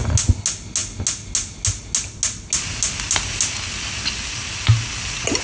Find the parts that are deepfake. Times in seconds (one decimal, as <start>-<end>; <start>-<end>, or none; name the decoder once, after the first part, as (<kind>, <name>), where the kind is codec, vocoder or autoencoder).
none